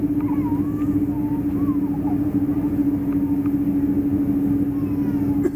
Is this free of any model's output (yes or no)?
yes